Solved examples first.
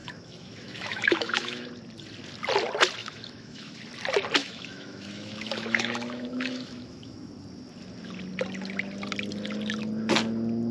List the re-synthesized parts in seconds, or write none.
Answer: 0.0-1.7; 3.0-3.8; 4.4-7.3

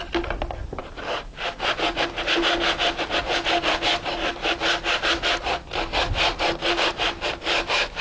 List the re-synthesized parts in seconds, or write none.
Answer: none

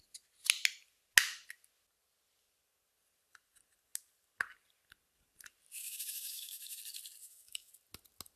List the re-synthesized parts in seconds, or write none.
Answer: 5.8-6.8; 7.2-7.7

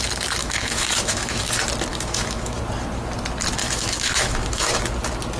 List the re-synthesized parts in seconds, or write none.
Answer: 0.4-1.5; 1.9-2.6; 3.6-4.8

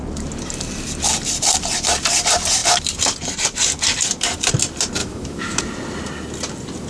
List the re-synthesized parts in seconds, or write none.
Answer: 5.0-5.6

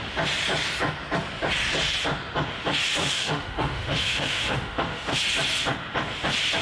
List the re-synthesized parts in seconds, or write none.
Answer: 3.0-5.2

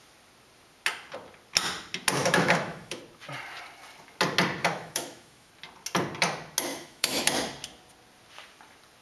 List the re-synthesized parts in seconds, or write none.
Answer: 2.2-3.0; 4.6-5.5; 6.7-7.2